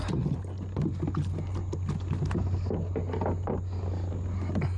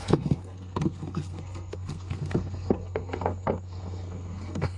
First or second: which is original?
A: first